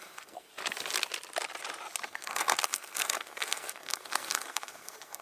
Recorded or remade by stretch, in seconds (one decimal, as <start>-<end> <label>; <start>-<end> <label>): 0.0-0.5 remade; 0.5-2.1 recorded; 2.1-5.2 remade